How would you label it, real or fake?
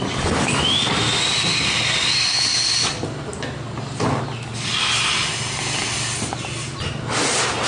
real